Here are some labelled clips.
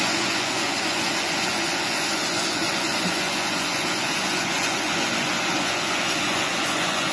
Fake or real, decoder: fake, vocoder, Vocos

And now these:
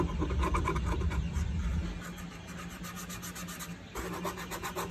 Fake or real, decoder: real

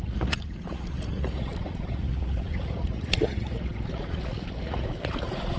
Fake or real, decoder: fake, vocoder, Vocos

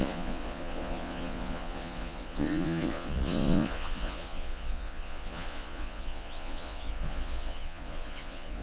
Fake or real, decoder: fake, vocoder, Vocos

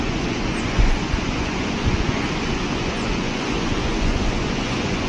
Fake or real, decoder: fake, vocoder, Vocos